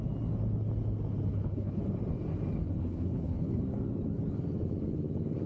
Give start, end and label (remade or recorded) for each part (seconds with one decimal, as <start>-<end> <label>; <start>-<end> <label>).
0.0-1.3 recorded; 1.3-1.8 remade; 1.8-2.8 recorded; 2.8-3.6 remade; 3.6-5.5 recorded